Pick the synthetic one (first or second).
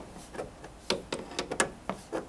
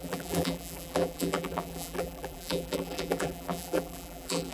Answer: second